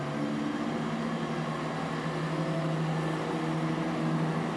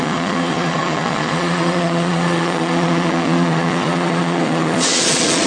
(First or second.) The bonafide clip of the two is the first